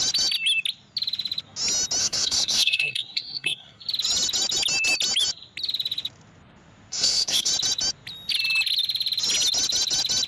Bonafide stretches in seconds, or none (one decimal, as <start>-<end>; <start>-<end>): 0.0-2.0; 3.8-6.9; 7.5-10.3